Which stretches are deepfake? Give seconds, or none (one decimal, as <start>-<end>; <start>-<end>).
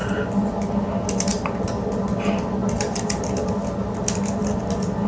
none